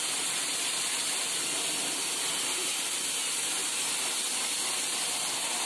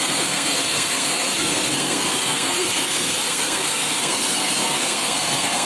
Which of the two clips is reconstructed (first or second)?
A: second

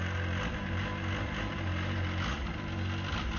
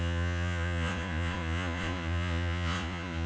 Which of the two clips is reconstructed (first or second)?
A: second